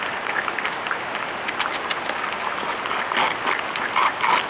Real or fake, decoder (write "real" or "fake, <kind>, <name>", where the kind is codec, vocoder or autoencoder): real